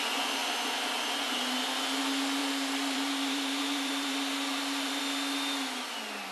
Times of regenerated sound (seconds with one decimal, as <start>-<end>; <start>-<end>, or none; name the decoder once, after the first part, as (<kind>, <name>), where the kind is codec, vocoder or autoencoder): 2.4-5.0 (vocoder, BigVGAN v2)